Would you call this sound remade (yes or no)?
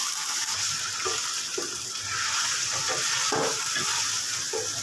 no